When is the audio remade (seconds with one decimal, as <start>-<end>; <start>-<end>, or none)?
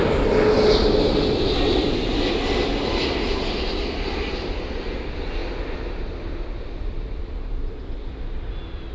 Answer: none